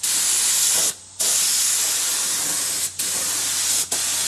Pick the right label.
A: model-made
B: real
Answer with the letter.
B